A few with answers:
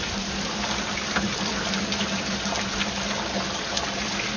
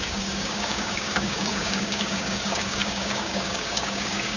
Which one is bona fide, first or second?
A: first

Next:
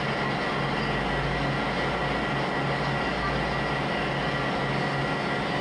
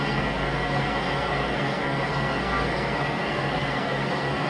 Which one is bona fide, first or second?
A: first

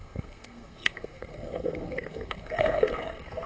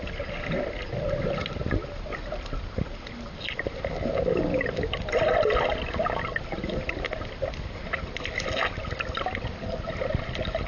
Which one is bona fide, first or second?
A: second